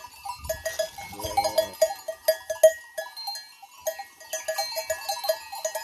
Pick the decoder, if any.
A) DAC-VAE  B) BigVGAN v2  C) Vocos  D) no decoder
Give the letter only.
D